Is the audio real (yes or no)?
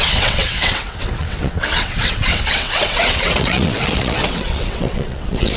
no